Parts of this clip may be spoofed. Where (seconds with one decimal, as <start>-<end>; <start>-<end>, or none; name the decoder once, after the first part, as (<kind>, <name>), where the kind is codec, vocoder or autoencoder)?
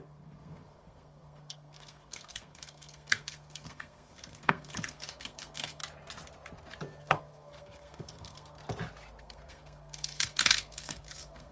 0.0-5.8 (codec, SNAC); 7.0-8.6; 9.2-11.5